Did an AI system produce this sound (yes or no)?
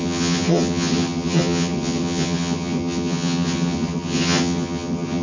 yes